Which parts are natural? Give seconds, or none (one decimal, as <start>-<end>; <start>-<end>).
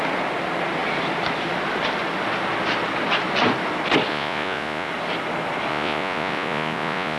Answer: 0.0-4.1; 4.9-5.7